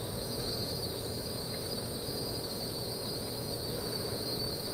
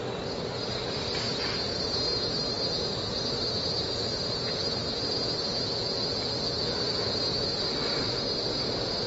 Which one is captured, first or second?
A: second